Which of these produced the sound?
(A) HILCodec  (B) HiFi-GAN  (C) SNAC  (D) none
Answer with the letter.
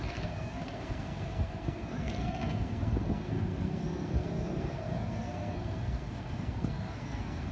C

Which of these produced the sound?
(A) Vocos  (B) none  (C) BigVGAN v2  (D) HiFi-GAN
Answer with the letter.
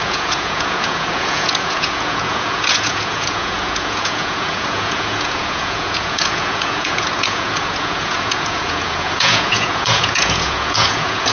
A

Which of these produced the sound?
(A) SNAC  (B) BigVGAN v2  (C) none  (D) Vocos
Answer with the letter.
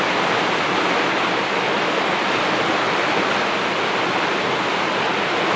C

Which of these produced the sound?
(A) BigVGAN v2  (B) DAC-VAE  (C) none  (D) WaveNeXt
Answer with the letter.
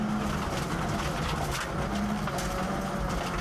C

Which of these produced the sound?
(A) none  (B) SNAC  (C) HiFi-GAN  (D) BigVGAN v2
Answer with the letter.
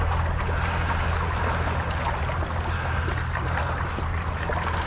A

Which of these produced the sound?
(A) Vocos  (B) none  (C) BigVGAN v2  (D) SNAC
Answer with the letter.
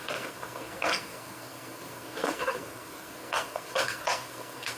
D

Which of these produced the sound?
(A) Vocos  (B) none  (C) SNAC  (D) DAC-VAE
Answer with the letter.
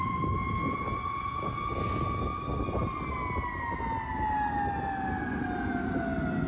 B